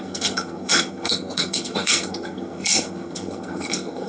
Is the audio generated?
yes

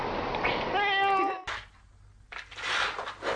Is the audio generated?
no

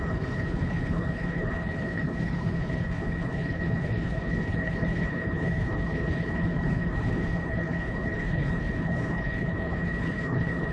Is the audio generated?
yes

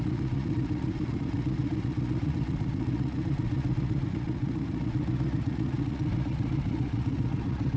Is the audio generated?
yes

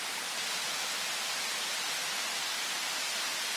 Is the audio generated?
no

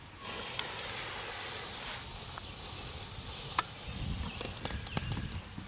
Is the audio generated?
no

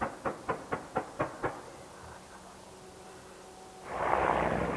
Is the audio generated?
no